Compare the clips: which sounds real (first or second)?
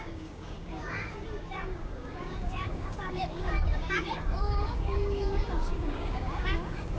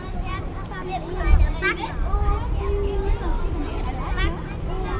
second